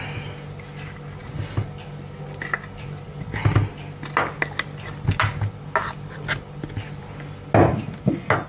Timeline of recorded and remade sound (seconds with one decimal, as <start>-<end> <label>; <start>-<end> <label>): 0.0-8.5 recorded